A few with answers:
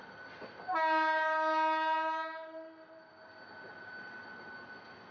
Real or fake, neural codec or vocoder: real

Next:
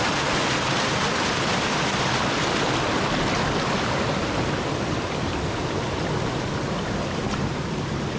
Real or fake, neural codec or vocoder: real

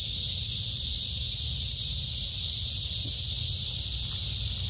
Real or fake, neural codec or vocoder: real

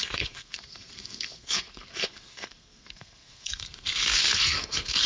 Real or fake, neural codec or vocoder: fake, codec, SNAC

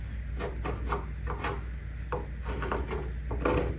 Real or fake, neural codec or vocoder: real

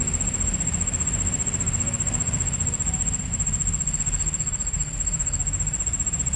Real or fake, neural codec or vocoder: real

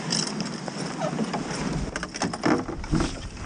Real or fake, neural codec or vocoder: real